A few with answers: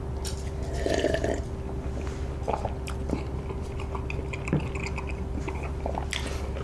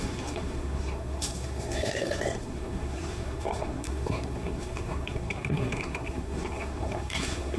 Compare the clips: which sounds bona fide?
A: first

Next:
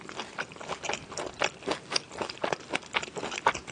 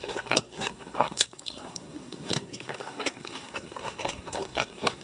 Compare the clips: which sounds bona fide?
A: first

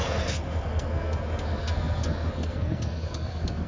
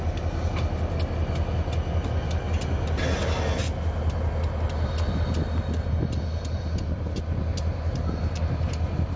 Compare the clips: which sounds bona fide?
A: second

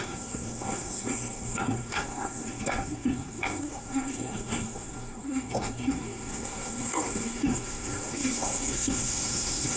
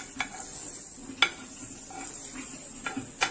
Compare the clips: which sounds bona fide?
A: second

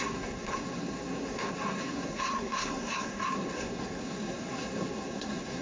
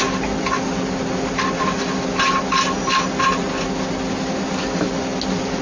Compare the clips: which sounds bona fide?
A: second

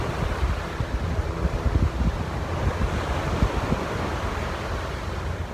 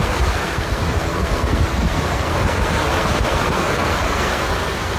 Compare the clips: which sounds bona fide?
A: first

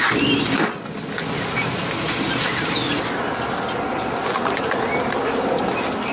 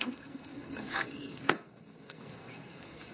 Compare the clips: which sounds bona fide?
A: first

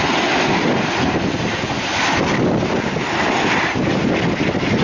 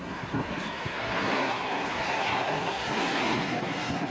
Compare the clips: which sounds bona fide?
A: first